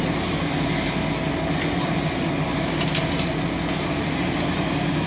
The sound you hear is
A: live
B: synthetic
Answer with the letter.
A